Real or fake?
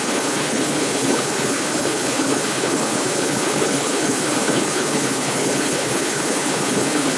fake